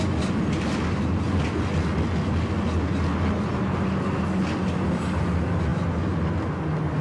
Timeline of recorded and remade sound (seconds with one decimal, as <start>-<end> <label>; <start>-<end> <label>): 0.0-7.0 recorded

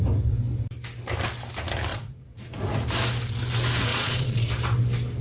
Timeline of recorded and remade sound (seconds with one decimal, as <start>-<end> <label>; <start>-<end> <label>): 0.0-1.9 recorded; 1.9-2.8 remade; 2.8-3.9 recorded; 3.9-4.5 remade; 4.5-5.2 recorded